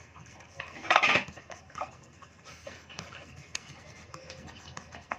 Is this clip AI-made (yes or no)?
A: yes